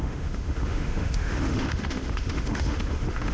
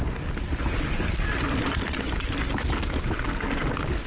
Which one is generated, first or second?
first